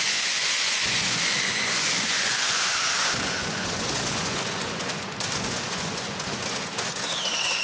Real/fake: fake